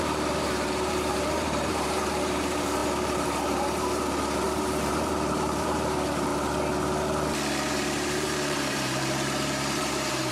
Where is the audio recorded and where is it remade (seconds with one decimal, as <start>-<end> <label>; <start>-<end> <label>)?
0.0-6.3 remade; 6.3-7.7 recorded; 7.7-10.3 remade